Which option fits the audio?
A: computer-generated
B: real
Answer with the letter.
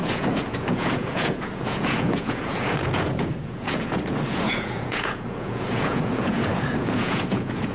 A